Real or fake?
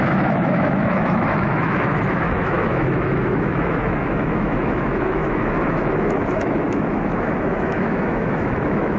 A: fake